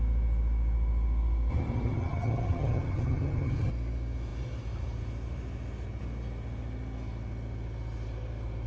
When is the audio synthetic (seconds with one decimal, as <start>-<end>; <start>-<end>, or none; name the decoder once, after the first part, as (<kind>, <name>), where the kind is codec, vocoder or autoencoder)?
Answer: 1.5-3.7 (vocoder, HiFi-GAN)